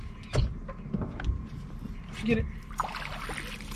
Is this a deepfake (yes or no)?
no